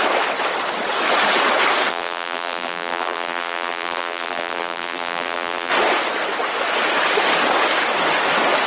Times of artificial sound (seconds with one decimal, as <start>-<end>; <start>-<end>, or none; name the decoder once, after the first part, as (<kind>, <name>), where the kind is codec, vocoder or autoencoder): 1.9-5.7 (vocoder, BigVGAN v2)